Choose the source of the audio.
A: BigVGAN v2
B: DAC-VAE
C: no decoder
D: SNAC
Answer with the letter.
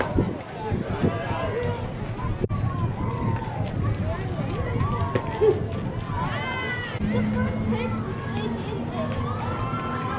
C